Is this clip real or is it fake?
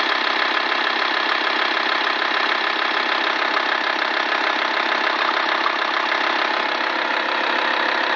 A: fake